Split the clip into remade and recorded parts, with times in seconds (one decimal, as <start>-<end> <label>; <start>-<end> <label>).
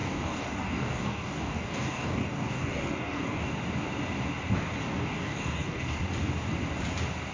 0.0-3.5 remade; 3.5-4.8 recorded; 4.8-6.0 remade; 6.0-7.3 recorded